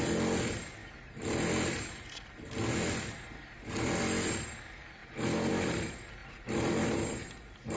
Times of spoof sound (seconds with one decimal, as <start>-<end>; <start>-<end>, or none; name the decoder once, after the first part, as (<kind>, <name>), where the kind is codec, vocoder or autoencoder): none